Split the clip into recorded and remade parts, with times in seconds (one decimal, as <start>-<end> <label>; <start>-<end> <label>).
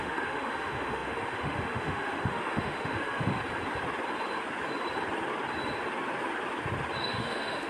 0.0-3.4 remade; 3.4-7.0 recorded; 7.0-7.7 remade